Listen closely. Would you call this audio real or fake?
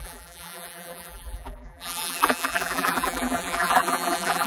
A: fake